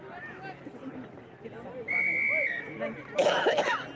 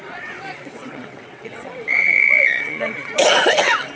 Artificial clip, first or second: second